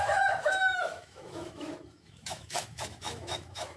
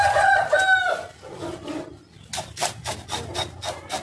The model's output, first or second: first